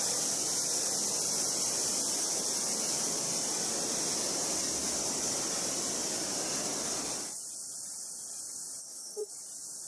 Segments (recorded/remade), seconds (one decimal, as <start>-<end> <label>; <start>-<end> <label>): 0.0-8.8 recorded; 8.8-9.3 remade; 9.3-9.9 recorded